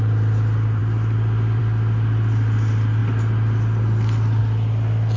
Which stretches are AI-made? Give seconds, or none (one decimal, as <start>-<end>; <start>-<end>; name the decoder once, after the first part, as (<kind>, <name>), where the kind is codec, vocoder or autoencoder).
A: none

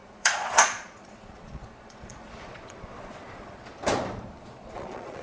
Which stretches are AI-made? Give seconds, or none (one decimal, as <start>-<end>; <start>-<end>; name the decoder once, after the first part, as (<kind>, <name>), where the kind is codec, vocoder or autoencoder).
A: 0.0-3.7 (vocoder, Vocos); 4.4-5.2